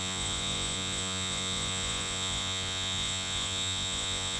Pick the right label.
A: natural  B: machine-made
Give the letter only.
B